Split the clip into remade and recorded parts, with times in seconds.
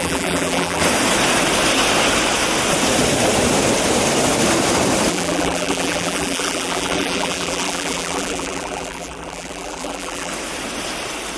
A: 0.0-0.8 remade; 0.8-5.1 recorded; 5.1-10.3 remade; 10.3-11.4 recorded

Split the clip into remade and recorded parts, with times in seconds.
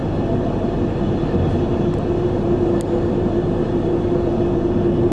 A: 0.0-5.1 remade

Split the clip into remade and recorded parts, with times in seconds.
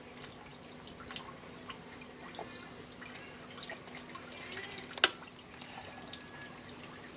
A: 0.0-7.2 recorded